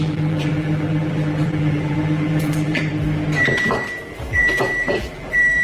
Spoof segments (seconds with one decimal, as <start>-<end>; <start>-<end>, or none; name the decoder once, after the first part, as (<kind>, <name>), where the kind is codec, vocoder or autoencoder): 0.0-2.9 (vocoder, BigVGAN v2); 4.3-5.6